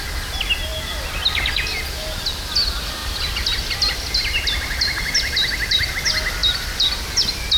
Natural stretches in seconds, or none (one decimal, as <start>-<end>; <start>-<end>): 0.0-3.0; 5.9-6.4